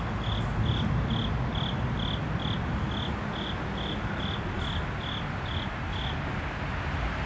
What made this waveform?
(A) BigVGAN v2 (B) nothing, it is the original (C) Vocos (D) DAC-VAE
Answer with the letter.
B